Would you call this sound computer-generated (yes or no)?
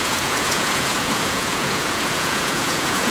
yes